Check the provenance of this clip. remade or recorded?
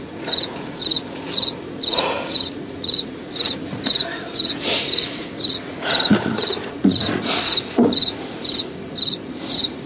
remade